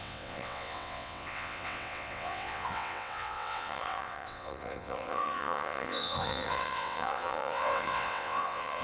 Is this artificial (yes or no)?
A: yes